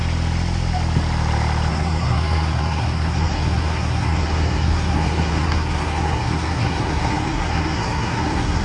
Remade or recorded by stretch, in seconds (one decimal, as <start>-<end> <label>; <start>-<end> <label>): 0.0-1.7 recorded; 1.7-8.6 remade